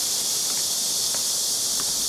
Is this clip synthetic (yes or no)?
no